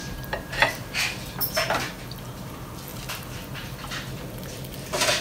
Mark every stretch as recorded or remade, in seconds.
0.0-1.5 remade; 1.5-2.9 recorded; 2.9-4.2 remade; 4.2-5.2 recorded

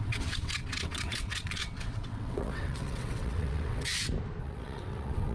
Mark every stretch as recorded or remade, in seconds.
0.0-3.9 remade; 3.9-4.4 recorded; 4.4-5.3 remade

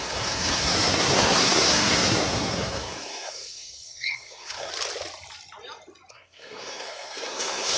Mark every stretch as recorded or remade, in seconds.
0.0-4.7 remade; 4.7-6.1 recorded; 6.1-7.8 remade

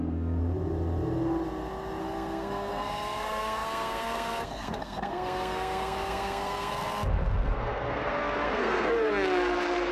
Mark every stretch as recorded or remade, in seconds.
0.0-0.4 remade; 0.4-2.0 recorded; 2.0-9.9 remade

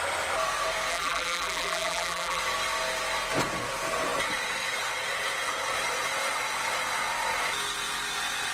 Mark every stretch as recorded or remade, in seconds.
0.0-0.9 recorded; 0.9-2.4 remade; 2.4-8.5 recorded

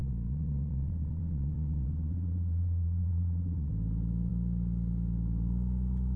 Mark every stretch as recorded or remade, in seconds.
0.0-3.7 remade; 3.7-6.2 recorded

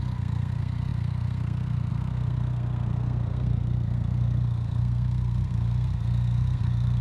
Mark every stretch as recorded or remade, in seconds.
0.0-7.0 remade